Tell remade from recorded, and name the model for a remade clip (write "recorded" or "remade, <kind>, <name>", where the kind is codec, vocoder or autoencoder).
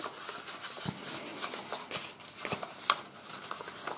remade, vocoder, BigVGAN v2